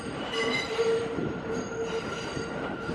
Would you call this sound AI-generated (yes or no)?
no